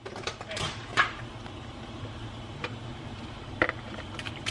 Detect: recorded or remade remade